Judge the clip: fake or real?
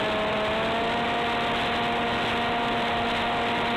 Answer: real